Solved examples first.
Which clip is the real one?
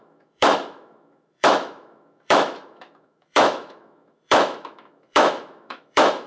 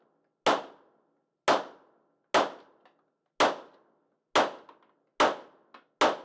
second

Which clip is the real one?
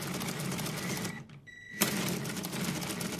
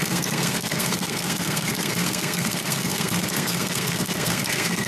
first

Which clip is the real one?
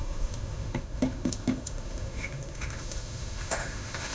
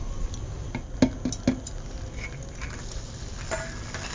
second